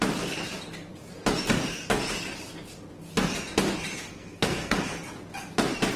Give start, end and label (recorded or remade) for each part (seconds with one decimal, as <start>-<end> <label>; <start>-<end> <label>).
0.0-4.1 recorded; 4.1-4.9 remade; 4.9-6.0 recorded